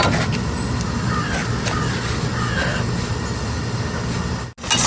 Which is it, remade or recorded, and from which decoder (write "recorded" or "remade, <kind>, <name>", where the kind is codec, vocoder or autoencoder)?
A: recorded